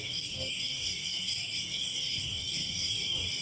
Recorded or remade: remade